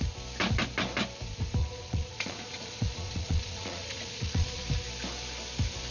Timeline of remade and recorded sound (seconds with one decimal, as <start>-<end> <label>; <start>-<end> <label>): 0.0-1.6 recorded; 1.6-4.7 remade; 4.7-5.9 recorded